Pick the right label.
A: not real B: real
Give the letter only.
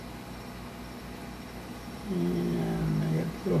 B